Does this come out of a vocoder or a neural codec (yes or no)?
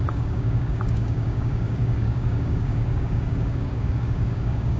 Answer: yes